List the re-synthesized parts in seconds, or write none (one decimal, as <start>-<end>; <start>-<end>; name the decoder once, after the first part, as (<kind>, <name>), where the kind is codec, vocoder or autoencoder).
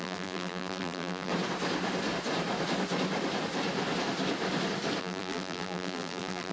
0.0-1.3 (vocoder, BigVGAN v2); 5.0-6.5